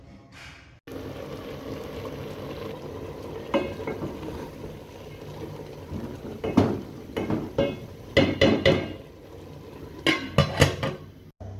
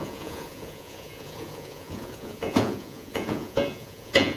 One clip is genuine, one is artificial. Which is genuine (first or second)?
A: first